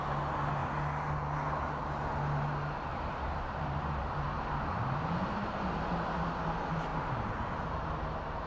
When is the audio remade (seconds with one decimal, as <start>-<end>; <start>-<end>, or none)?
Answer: 2.9-5.9; 6.9-7.5